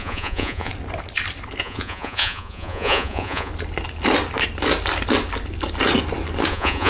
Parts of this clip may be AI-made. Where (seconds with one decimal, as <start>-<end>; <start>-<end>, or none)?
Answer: 0.0-0.7; 1.6-3.5; 6.5-6.9